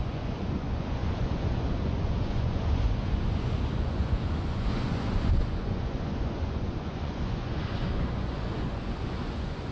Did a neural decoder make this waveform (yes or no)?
yes